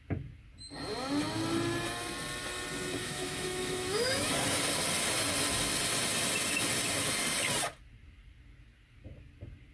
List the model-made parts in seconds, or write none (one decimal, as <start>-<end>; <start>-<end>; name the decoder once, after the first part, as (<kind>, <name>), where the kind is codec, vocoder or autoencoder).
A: 3.0-4.3 (autoencoder, DAC-VAE)